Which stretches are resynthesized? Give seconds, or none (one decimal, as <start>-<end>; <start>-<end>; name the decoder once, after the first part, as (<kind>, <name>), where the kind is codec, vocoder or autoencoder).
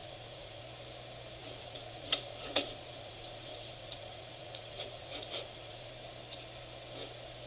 0.0-0.6 (vocoder, Vocos); 1.4-5.9